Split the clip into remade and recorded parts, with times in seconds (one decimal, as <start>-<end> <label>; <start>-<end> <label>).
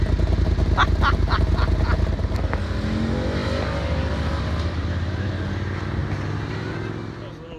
0.0-3.4 recorded; 3.4-5.3 remade; 5.3-7.6 recorded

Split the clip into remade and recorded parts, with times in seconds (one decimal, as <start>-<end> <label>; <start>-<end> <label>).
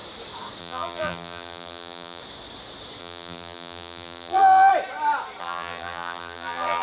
0.0-0.6 recorded; 0.6-2.2 remade; 2.2-3.0 recorded; 3.0-4.7 remade; 4.7-5.4 recorded; 5.4-6.8 remade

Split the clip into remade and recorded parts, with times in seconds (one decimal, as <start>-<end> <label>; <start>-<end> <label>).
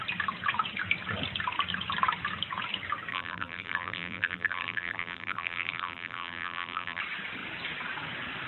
0.0-3.1 recorded; 3.1-7.0 remade; 7.0-8.5 recorded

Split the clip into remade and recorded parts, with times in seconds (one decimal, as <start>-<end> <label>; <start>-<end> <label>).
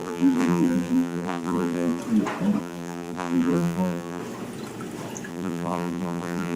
0.0-2.0 remade; 2.0-2.6 recorded; 2.6-4.2 remade; 4.2-5.3 recorded; 5.3-6.6 remade